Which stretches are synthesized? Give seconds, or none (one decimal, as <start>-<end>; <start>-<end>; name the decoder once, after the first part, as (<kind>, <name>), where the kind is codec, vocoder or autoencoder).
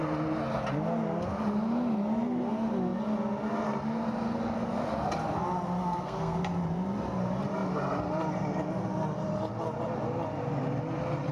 5.8-6.4 (codec, SNAC)